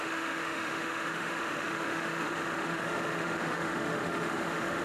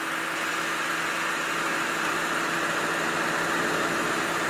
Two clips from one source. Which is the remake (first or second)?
first